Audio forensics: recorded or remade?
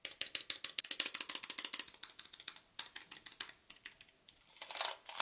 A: recorded